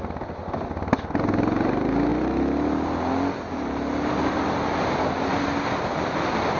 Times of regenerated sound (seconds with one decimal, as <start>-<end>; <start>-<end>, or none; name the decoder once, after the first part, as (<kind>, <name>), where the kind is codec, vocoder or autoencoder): none